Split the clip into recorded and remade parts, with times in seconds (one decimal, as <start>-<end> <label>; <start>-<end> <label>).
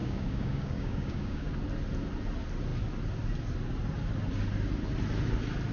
0.0-1.5 remade; 1.5-5.7 recorded